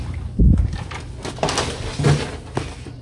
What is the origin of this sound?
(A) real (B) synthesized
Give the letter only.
A